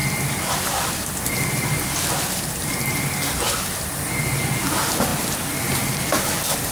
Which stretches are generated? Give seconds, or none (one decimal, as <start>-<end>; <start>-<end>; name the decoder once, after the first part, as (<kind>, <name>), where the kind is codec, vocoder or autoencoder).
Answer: 0.0-3.4 (vocoder, BigVGAN v2); 5.1-6.3